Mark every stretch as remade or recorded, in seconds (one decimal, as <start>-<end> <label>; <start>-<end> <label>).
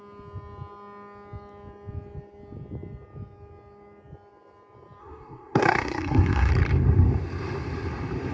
0.0-5.0 recorded; 5.0-6.5 remade; 6.5-8.3 recorded